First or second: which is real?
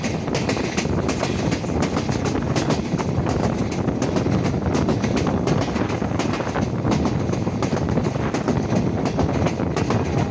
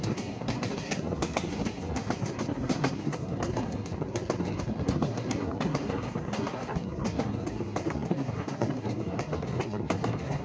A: first